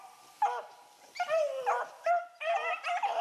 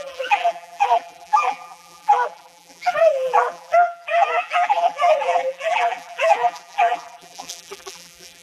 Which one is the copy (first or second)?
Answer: second